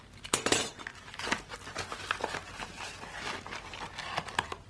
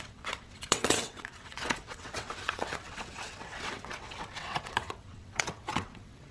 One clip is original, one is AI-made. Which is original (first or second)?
first